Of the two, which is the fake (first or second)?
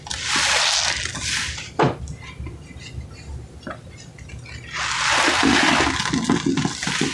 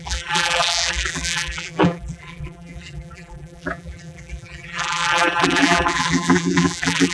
second